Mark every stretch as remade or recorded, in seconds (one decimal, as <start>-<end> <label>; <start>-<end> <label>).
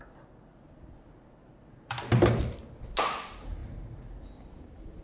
0.0-1.6 recorded; 1.6-2.6 remade; 2.6-5.0 recorded